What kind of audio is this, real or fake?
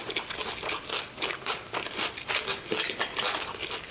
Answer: real